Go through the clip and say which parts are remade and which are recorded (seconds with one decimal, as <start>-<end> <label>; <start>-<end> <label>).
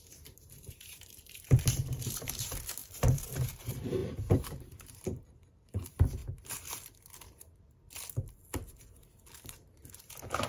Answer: 0.0-6.2 remade; 6.2-9.4 recorded; 9.4-10.5 remade